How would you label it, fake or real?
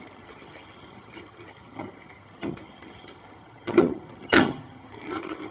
fake